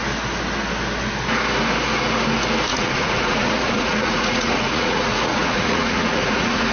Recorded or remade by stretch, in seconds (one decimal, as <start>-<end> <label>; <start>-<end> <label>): 0.0-2.7 recorded; 2.7-6.7 remade